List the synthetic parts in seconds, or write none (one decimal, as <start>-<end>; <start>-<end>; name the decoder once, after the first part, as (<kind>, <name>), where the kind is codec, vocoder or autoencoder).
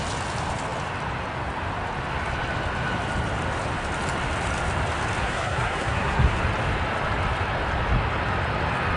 5.2-6.4 (codec, SNAC)